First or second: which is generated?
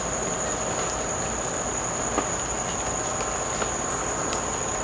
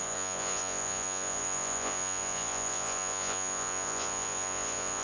second